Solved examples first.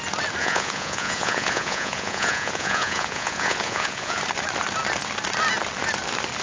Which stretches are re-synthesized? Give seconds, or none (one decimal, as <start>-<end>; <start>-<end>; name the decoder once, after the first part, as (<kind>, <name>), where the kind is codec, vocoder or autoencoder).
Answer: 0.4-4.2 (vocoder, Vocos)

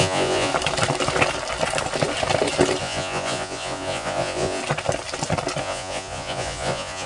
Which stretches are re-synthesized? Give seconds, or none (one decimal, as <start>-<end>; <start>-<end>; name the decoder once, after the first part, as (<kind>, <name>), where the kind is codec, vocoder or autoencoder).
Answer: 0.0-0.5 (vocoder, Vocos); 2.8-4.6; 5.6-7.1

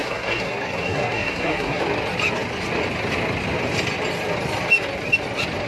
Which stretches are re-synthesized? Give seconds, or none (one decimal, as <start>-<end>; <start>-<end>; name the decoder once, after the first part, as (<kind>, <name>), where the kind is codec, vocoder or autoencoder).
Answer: 0.0-1.8 (codec, SNAC)

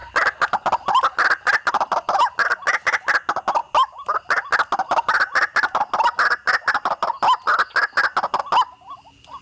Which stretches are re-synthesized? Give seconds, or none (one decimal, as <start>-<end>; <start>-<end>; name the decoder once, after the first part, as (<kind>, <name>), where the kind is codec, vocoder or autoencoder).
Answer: none

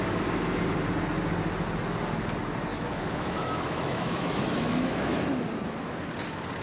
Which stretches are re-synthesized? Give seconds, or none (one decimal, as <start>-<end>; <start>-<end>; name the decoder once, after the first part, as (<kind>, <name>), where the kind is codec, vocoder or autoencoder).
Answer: 2.7-5.2 (autoencoder, DAC-VAE)